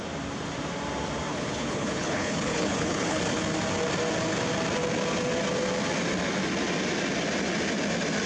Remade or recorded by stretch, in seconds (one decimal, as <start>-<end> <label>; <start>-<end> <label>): 0.0-1.3 recorded; 1.3-3.2 remade; 3.2-8.3 recorded